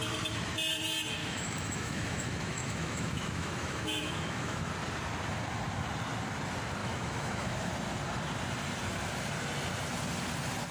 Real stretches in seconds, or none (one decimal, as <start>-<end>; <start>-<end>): 0.0-1.2; 4.7-6.8; 7.7-10.7